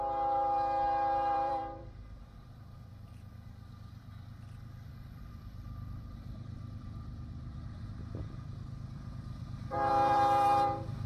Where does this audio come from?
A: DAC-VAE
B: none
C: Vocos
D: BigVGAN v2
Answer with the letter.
D